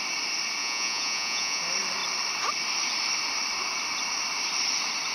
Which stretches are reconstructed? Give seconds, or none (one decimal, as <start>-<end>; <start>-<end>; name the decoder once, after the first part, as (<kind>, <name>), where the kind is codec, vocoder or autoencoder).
0.6-1.6 (vocoder, Vocos)